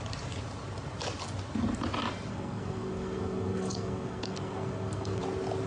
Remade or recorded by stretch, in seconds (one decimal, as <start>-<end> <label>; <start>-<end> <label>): 0.0-2.3 recorded; 2.3-5.2 remade; 5.2-5.7 recorded